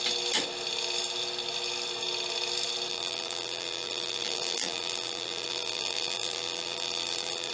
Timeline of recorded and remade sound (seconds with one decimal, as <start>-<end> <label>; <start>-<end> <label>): 0.0-2.9 recorded; 2.9-7.5 remade